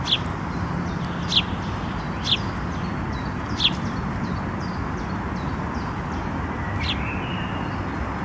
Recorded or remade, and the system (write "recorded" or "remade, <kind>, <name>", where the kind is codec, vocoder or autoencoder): recorded